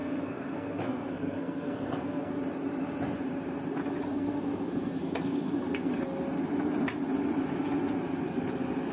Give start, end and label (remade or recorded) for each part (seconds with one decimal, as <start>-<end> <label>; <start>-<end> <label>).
0.0-2.3 remade; 2.3-4.1 recorded; 4.1-5.9 remade; 5.9-8.9 recorded